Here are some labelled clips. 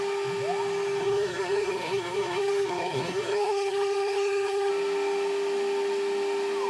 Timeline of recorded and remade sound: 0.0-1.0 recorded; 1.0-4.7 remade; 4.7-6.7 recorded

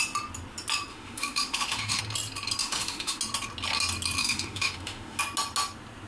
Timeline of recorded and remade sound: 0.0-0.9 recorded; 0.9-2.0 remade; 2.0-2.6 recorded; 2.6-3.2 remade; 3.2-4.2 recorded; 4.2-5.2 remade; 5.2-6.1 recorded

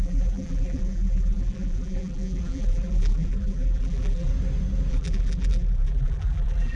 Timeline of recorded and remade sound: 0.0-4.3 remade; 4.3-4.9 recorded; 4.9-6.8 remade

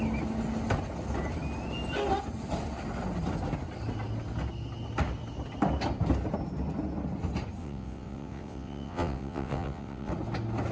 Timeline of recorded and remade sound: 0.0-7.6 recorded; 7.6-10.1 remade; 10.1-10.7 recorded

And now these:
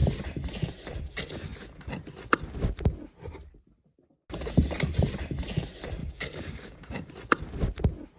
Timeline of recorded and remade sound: 0.0-6.0 recorded; 6.0-7.1 remade; 7.1-8.2 recorded

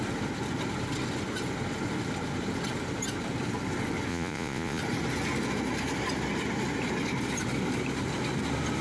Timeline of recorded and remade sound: 0.0-4.1 recorded; 4.1-4.8 remade; 4.8-8.8 recorded